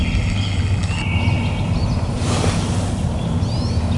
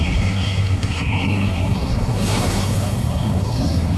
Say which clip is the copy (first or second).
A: second